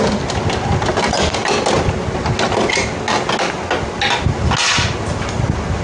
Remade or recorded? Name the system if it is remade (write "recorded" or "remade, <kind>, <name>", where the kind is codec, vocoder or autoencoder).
recorded